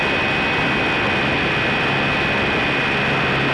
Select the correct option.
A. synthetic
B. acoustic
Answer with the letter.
B